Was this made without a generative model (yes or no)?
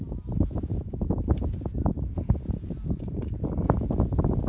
no